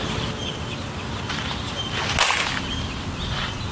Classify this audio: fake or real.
real